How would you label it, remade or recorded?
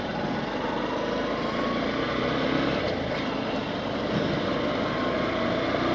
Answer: recorded